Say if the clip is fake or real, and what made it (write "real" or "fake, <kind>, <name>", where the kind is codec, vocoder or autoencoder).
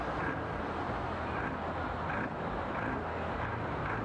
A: real